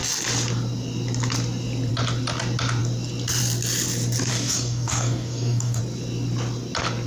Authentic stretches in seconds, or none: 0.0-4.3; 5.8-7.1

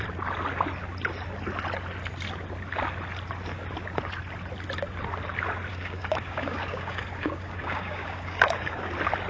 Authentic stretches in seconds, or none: 0.0-5.7; 8.9-9.3